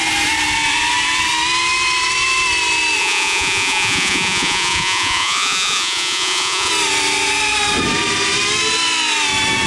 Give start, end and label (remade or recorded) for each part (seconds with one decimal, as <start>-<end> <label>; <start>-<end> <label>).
0.0-3.0 recorded; 3.0-6.7 remade; 6.7-9.7 recorded

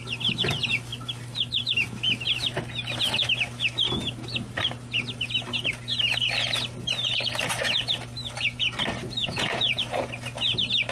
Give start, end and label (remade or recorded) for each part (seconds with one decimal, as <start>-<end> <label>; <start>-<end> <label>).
0.0-9.2 recorded; 9.2-9.8 remade; 9.8-10.9 recorded

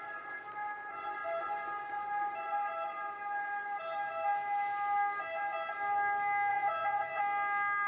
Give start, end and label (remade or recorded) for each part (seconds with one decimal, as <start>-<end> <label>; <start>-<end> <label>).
0.0-6.5 recorded; 6.5-7.2 remade; 7.2-7.9 recorded

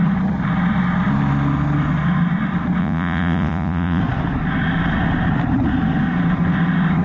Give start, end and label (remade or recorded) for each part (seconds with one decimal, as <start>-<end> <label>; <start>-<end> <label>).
0.0-2.8 recorded; 2.8-4.0 remade; 4.0-7.0 recorded

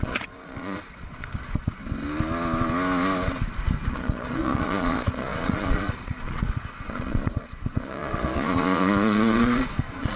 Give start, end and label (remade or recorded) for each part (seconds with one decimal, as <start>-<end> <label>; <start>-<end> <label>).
0.0-1.8 remade; 1.8-3.9 recorded; 3.9-10.2 remade